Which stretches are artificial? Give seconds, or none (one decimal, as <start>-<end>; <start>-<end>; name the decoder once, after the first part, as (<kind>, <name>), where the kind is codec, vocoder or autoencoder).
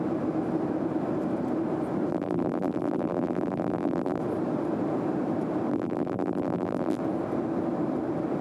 2.1-4.2 (vocoder, BigVGAN v2); 5.7-7.0